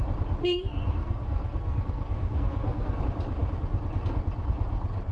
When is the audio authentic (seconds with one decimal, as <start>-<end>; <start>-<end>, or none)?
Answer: 0.0-0.4; 3.0-5.1